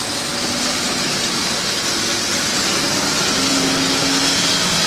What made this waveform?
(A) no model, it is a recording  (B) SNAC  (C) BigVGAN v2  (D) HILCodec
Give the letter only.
A